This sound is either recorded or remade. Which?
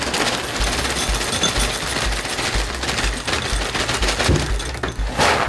recorded